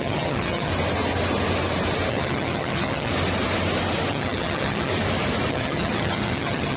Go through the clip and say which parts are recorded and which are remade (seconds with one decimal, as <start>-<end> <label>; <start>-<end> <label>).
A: 0.0-0.7 remade; 0.7-2.1 recorded; 2.1-3.1 remade; 3.1-4.1 recorded; 4.1-4.9 remade; 4.9-5.5 recorded; 5.5-6.8 remade